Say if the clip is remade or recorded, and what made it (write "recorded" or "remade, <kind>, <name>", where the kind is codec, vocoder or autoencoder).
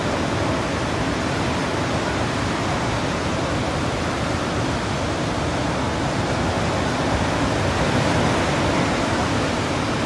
recorded